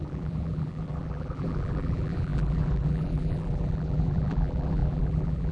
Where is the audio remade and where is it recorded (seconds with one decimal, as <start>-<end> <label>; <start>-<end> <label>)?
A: 0.0-5.5 remade